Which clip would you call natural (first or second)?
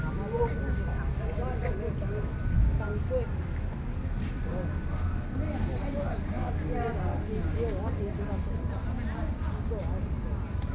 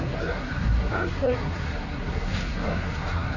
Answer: first